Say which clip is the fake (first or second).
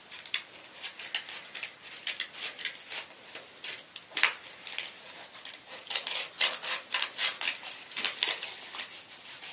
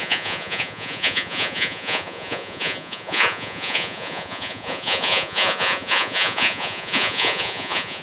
second